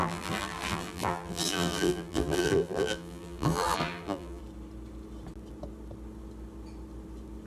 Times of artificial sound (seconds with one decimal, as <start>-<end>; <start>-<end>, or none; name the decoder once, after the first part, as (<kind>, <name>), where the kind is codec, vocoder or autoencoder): 0.0-4.4 (vocoder, BigVGAN v2)